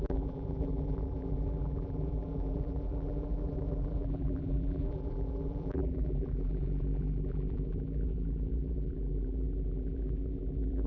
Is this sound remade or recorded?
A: remade